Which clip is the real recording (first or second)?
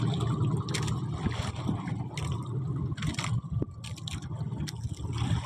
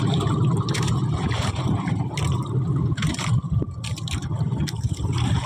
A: first